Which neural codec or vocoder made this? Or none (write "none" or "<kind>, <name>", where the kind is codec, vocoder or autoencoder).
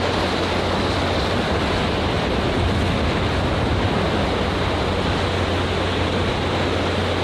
none